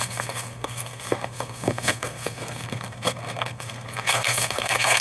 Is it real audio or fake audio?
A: fake